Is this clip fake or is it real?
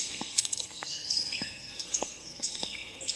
fake